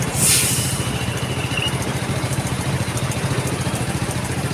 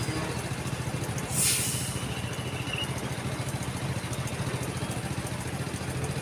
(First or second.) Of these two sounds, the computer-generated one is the first